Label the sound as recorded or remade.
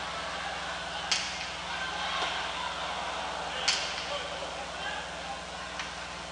recorded